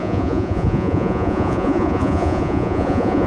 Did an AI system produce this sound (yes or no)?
yes